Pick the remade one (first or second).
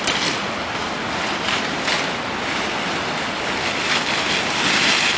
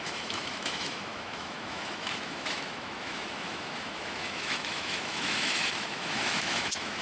second